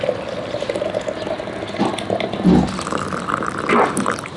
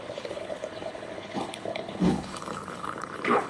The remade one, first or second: second